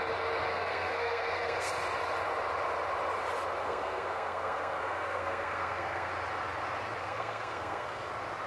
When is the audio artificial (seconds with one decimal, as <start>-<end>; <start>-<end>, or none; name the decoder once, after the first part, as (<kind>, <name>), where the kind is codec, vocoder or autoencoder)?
0.5-1.7 (codec, SNAC); 3.6-6.1; 7.0-8.1

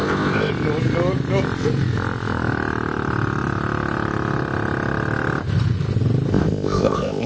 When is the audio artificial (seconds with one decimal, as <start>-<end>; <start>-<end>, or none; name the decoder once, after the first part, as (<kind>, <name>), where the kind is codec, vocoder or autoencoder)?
0.0-0.5 (codec, ZipCodec); 6.3-7.3